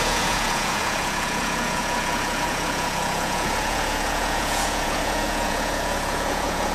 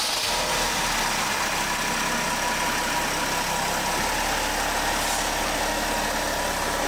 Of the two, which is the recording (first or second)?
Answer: second